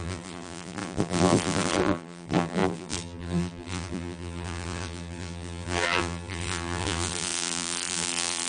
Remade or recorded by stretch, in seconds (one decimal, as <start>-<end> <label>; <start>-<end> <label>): 0.0-8.5 remade